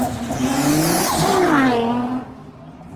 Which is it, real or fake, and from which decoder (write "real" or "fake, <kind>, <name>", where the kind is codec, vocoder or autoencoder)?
real